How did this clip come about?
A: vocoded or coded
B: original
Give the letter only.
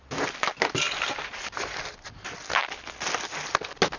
B